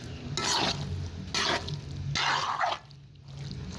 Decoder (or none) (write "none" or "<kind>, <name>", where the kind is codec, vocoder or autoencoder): none